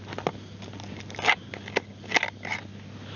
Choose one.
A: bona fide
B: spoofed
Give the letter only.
A